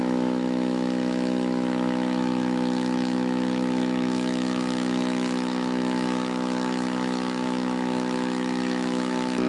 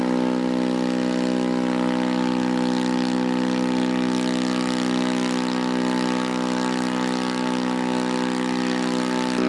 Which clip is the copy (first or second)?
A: first